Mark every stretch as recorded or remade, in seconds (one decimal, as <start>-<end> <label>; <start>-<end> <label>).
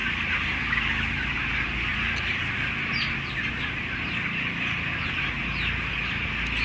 0.0-6.6 recorded